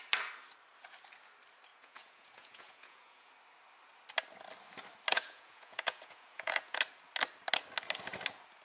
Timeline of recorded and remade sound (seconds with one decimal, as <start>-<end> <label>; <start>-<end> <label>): 0.0-1.7 recorded; 1.7-3.3 remade; 3.3-5.1 recorded; 5.1-6.8 remade; 6.8-8.6 recorded